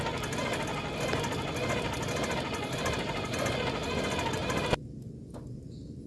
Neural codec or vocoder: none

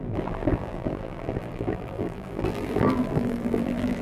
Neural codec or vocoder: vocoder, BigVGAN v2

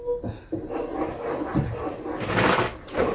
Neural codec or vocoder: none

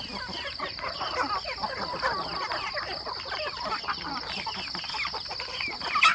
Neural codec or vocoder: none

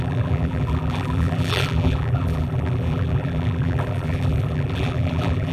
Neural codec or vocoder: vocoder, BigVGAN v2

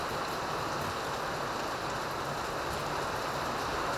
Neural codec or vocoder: none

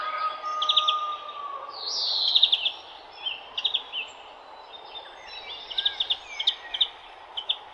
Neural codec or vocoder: none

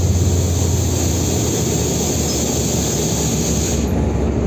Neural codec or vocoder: none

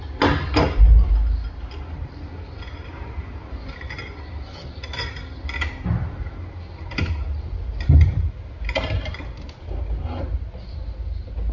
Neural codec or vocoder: none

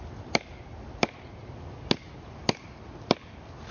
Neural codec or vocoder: none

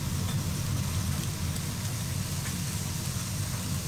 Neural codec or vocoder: none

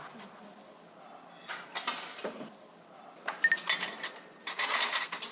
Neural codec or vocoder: none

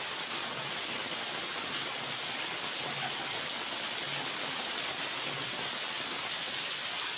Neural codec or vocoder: none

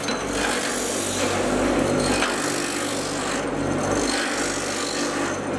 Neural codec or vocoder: none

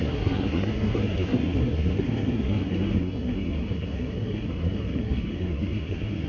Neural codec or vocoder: codec, SNAC